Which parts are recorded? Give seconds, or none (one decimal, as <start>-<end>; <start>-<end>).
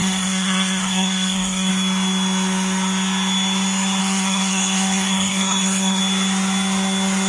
1.7-4.0; 6.0-7.3